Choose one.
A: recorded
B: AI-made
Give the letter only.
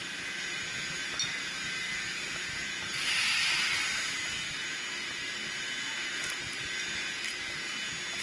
A